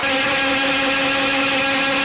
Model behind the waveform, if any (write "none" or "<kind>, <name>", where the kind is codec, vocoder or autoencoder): none